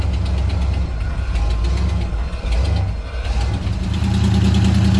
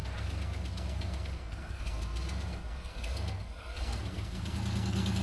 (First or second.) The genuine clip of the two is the first